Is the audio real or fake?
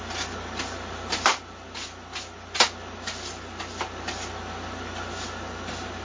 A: real